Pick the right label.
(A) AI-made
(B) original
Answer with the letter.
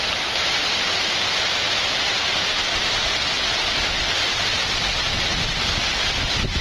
B